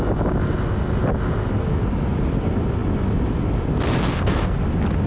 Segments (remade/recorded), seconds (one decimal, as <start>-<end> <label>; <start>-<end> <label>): 0.0-4.0 recorded; 4.0-4.6 remade; 4.6-5.1 recorded